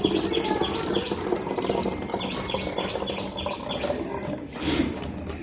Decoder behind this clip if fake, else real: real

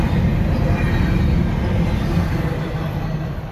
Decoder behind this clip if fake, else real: real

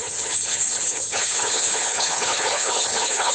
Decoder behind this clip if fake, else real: fake, codec, HILCodec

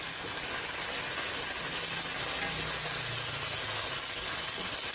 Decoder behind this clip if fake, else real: real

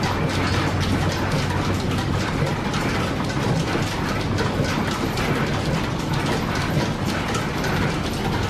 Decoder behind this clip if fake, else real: real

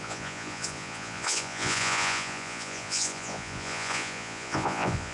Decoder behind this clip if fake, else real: fake, vocoder, Vocos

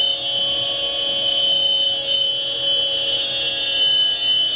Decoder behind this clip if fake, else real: real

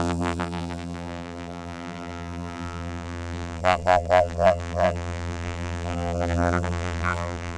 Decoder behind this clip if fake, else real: fake, vocoder, BigVGAN v2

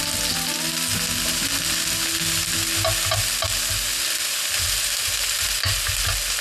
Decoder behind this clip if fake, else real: real